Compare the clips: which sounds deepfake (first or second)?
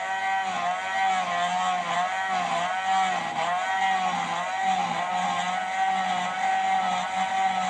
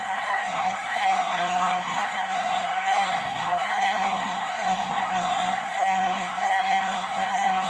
second